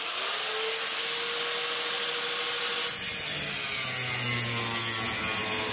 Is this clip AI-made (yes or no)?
no